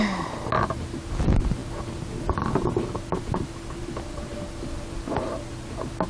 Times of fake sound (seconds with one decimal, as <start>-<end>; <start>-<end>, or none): none